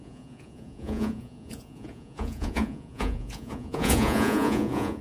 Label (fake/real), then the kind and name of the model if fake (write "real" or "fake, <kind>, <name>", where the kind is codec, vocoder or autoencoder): fake, vocoder, Vocos